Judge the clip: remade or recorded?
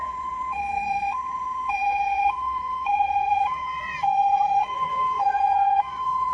remade